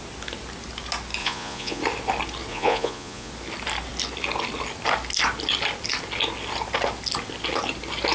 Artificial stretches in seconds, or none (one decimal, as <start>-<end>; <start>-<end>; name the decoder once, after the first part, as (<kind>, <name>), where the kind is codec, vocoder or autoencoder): 1.2-1.8 (vocoder, Vocos); 2.5-3.3